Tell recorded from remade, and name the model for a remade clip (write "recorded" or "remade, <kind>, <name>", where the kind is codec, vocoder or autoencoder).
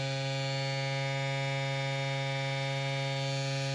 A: recorded